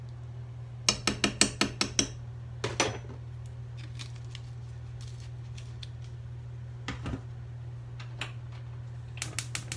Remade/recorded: recorded